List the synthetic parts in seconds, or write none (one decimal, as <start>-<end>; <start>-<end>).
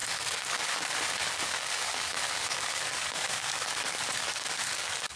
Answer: 0.0-5.2